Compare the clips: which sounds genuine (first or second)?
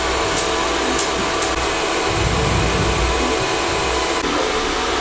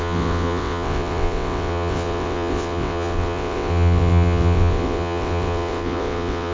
first